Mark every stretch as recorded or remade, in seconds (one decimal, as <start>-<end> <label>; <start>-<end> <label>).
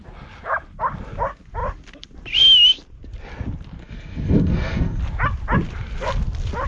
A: 0.0-3.8 recorded; 3.8-5.0 remade; 5.0-6.7 recorded